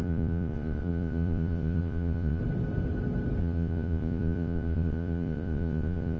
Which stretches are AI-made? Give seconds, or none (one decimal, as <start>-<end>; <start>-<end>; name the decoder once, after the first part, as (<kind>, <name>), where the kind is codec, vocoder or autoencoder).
0.0-2.4 (vocoder, Vocos); 3.4-6.2